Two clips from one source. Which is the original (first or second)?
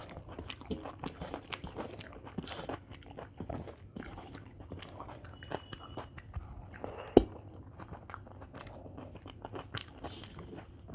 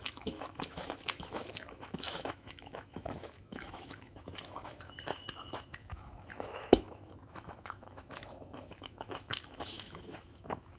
first